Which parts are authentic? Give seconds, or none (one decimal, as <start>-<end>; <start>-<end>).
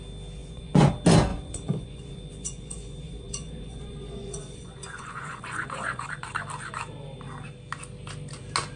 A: 0.0-0.4; 0.9-1.3; 6.1-8.8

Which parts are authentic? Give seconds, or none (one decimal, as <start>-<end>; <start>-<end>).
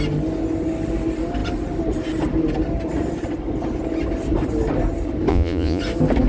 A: 0.0-5.3; 5.8-6.3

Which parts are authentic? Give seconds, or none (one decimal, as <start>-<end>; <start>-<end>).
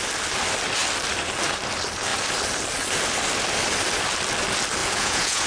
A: 0.0-4.8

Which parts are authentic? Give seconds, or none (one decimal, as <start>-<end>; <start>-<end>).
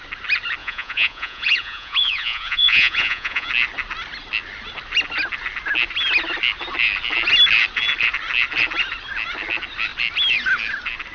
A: 0.0-0.6; 3.5-11.1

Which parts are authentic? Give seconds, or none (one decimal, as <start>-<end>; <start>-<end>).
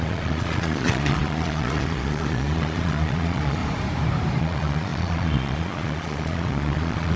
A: 3.6-4.4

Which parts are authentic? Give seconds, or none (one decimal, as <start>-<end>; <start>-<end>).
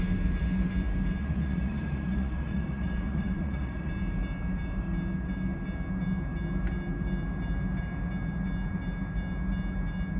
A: 0.0-1.2; 3.9-10.2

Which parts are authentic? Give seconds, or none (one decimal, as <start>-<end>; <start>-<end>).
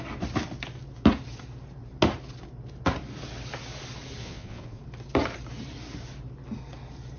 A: 0.0-4.2; 4.8-7.2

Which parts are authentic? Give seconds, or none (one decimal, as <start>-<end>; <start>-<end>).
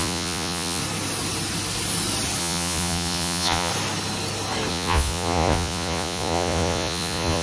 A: 0.8-2.4; 3.7-4.7